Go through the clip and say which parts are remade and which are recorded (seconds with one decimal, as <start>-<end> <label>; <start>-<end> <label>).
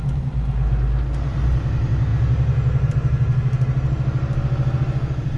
0.0-5.4 recorded